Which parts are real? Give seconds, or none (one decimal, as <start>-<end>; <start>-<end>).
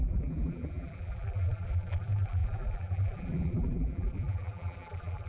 none